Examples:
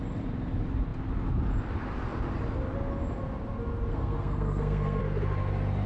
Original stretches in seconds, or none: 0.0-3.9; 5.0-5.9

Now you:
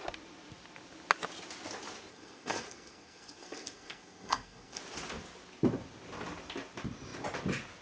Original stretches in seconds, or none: 0.0-2.1; 4.8-7.8